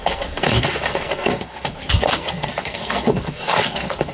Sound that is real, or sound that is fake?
fake